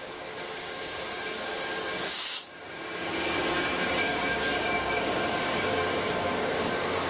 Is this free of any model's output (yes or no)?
no